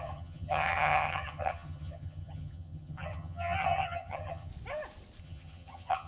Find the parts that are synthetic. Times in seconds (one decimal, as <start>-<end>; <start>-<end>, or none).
0.0-4.5; 5.2-6.1